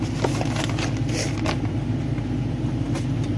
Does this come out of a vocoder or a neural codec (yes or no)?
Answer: no